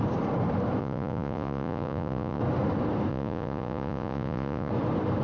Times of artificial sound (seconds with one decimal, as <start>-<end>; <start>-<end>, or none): 0.8-2.4; 3.1-4.7